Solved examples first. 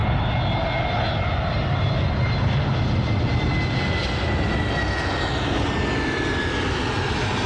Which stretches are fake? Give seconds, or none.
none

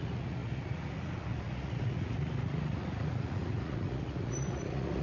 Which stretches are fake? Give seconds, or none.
0.0-5.0 (vocoder, Vocos)

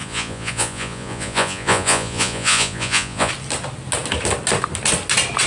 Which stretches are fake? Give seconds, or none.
0.0-3.3 (vocoder, Vocos)

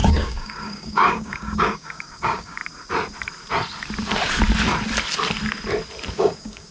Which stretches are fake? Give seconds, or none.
0.0-2.6 (codec, DAC); 6.1-6.7

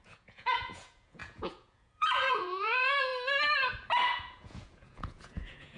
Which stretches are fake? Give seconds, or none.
0.0-3.1 (vocoder, Vocos); 4.1-5.8

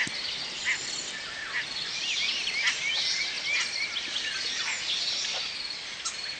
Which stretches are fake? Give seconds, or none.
none